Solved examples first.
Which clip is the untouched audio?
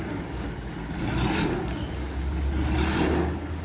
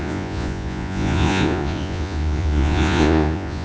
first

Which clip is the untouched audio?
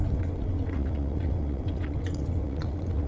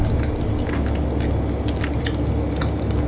second